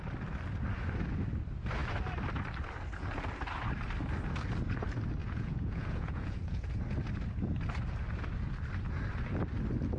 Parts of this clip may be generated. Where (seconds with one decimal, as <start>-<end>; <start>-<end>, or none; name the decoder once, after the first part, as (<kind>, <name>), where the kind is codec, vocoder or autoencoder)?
5.2-6.8 (vocoder, Vocos)